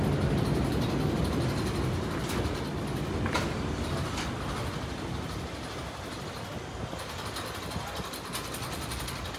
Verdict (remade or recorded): recorded